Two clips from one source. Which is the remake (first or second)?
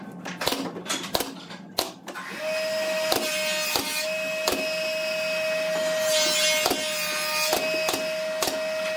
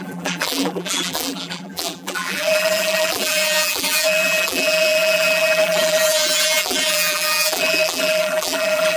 second